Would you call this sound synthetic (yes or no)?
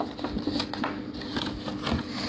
no